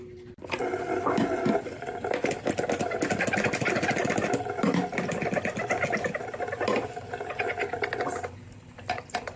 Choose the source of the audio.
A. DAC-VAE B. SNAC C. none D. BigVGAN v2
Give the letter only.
C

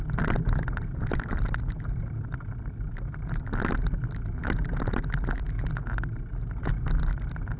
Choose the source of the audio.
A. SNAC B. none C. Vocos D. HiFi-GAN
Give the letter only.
B